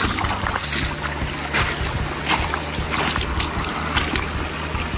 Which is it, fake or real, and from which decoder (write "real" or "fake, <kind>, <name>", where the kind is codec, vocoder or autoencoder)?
real